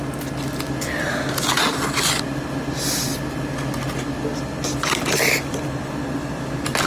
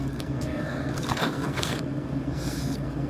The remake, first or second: second